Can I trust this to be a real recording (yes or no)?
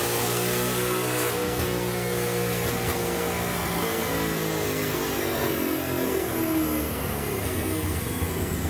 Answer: no